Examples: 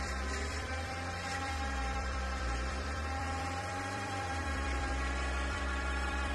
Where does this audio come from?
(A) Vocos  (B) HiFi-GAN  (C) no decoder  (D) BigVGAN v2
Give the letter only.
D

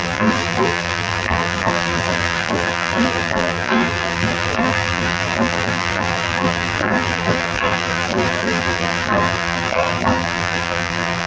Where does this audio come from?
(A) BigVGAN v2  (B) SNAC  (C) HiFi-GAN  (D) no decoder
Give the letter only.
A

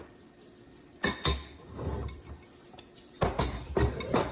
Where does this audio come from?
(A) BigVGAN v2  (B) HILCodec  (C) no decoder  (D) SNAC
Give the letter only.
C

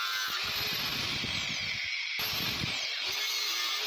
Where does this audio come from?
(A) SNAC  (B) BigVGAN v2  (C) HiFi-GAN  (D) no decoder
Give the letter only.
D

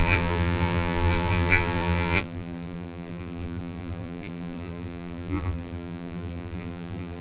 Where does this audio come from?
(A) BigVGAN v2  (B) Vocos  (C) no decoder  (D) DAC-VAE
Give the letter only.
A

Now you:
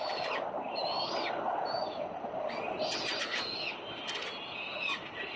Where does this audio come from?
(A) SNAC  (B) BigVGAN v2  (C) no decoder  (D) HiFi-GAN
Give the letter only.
C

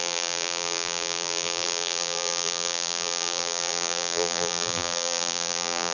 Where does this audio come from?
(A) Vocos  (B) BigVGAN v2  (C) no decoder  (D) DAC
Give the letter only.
B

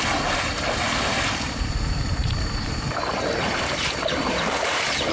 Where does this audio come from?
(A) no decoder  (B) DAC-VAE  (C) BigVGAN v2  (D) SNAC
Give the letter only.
C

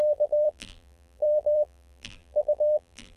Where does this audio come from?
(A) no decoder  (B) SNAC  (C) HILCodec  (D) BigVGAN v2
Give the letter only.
D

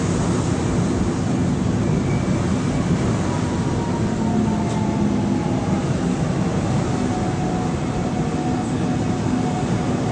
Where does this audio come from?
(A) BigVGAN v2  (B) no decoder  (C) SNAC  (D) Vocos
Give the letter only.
B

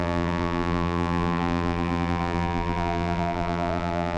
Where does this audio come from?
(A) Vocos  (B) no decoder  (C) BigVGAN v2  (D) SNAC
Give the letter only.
C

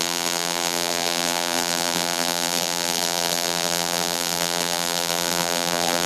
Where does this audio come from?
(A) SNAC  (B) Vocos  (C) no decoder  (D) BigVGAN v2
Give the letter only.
D